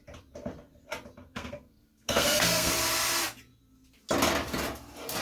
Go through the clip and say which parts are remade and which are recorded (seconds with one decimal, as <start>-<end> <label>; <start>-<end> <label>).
0.0-1.2 recorded; 1.2-2.7 remade; 2.7-5.2 recorded